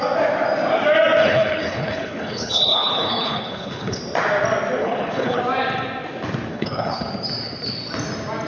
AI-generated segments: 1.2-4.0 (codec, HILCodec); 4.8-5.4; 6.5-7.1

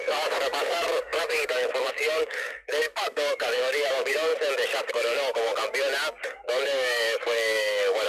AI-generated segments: 0.0-4.3 (codec, DAC); 4.9-5.5; 6.2-8.1

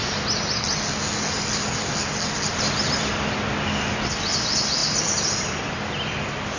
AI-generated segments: 4.8-5.7 (vocoder, BigVGAN v2)

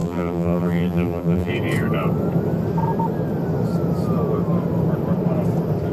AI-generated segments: 0.0-1.5 (vocoder, BigVGAN v2)

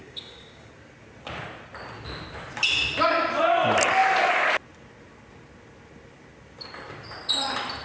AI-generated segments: 0.0-0.7 (codec, DAC)

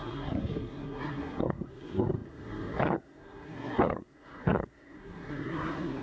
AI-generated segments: 0.0-6.0 (codec, SNAC)

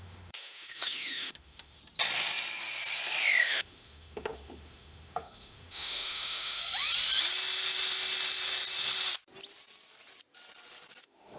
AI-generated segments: 0.0-1.8 (autoencoder, DAC-VAE); 3.4-6.6; 11.0-11.4